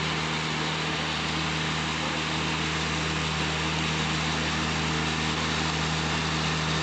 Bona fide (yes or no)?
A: yes